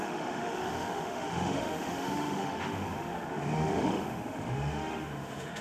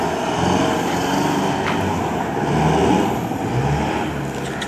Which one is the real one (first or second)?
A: second